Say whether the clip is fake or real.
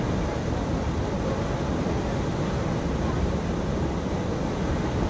real